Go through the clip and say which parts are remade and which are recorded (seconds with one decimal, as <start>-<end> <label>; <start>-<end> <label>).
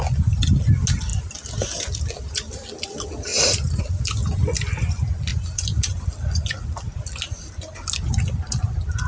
0.0-3.3 recorded; 3.3-4.0 remade; 4.0-5.3 recorded; 5.3-6.1 remade; 6.1-9.1 recorded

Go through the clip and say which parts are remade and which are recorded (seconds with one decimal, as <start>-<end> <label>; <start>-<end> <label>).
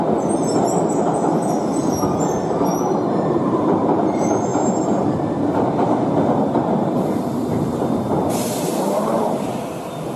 0.0-2.7 recorded; 2.7-3.8 remade; 3.8-4.5 recorded; 4.5-5.3 remade; 5.3-6.8 recorded; 6.8-9.5 remade; 9.5-10.2 recorded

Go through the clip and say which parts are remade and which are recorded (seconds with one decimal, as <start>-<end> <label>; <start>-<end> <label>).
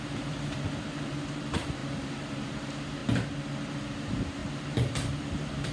0.0-3.0 remade; 3.0-3.6 recorded; 3.6-5.7 remade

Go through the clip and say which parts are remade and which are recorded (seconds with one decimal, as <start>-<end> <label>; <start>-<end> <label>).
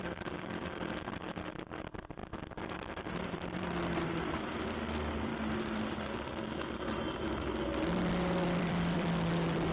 0.0-5.3 remade; 5.3-7.8 recorded; 7.8-9.7 remade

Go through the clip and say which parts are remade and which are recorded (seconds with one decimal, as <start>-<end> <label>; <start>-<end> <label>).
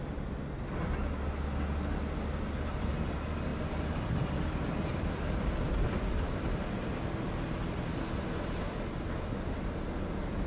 0.0-3.5 recorded; 3.5-5.7 remade; 5.7-10.5 recorded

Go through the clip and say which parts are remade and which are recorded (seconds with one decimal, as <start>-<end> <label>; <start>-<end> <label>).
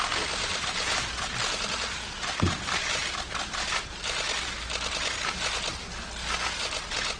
0.0-0.5 recorded; 0.5-1.7 remade; 1.7-7.2 recorded